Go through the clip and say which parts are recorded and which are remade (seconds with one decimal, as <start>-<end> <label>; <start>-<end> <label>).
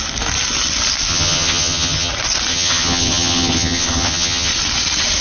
0.0-1.1 recorded; 1.1-2.1 remade; 2.1-2.5 recorded; 2.5-4.5 remade; 4.5-5.2 recorded